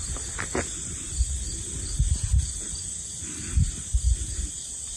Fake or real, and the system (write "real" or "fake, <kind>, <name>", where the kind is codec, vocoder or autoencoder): real